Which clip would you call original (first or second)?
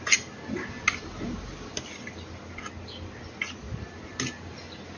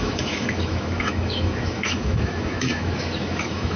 first